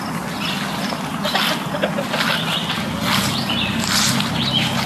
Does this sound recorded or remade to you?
recorded